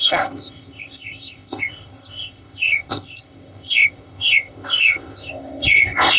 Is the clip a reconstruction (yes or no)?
yes